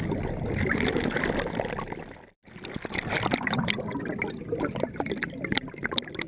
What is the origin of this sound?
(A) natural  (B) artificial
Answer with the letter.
A